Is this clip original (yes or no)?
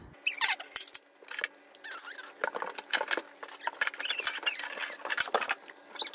yes